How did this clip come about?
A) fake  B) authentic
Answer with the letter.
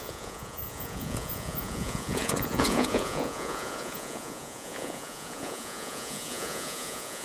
A